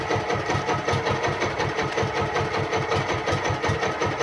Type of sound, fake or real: real